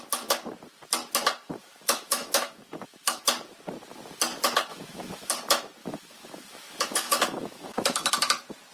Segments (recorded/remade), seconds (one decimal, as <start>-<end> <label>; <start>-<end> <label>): 0.0-1.6 recorded; 1.6-3.2 remade; 3.2-4.7 recorded; 4.7-5.3 remade; 5.3-5.8 recorded; 5.8-8.1 remade; 8.1-8.7 recorded